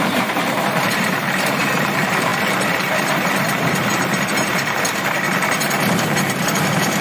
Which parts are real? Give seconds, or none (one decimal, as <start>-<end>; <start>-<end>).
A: none